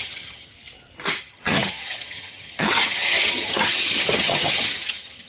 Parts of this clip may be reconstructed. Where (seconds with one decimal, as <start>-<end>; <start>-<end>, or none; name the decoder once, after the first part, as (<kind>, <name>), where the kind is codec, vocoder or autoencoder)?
0.0-0.5 (vocoder, HiFi-GAN); 1.2-5.3